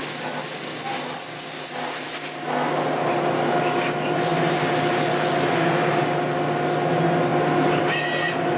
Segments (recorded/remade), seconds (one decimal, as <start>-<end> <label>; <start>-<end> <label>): 0.0-8.6 recorded